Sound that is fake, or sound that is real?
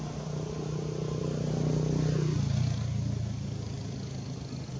real